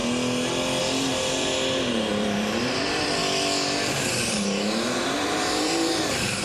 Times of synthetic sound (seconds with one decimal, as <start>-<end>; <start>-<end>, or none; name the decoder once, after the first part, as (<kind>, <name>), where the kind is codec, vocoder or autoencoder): 0.8-3.2 (vocoder, BigVGAN v2); 3.9-6.4